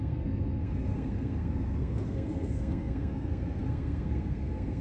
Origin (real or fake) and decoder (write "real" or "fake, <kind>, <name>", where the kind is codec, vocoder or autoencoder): fake, codec, SNAC